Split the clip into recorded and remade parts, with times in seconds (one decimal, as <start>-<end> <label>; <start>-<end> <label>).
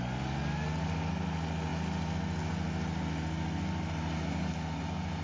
0.0-5.2 recorded